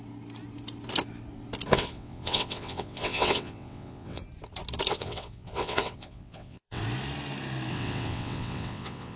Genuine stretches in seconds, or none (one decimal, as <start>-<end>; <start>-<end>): 0.0-1.7; 4.2-4.9; 6.8-7.7